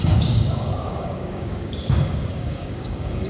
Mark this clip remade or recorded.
remade